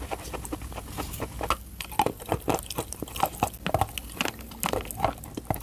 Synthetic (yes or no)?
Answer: no